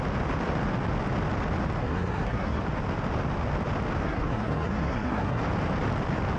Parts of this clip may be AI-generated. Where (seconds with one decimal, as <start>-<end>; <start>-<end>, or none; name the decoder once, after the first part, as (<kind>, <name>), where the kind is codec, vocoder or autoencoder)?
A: 1.8-2.6 (codec, SNAC); 4.0-5.4